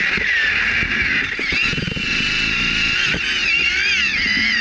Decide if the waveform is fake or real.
real